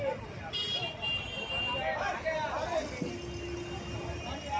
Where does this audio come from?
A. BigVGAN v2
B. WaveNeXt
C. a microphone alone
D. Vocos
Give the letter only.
C